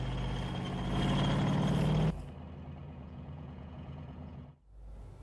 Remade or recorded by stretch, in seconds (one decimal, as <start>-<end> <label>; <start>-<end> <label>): 0.0-2.8 recorded; 2.8-4.5 remade; 4.5-5.2 recorded